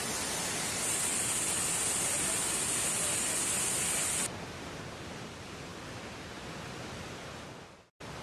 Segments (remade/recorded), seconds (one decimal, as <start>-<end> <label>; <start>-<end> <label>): 0.0-8.2 recorded